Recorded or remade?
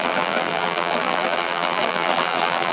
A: remade